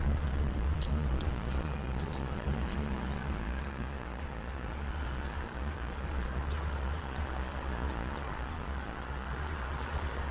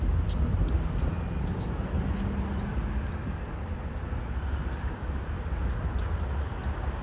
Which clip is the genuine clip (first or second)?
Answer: second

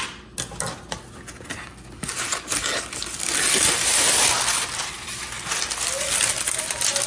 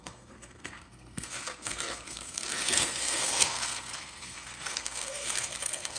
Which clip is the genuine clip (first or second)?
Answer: first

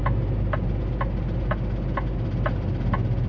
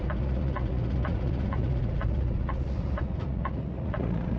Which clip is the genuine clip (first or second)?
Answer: first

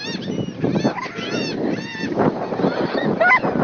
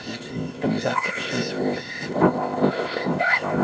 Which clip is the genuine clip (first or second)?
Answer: first